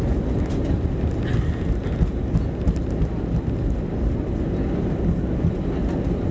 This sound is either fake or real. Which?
real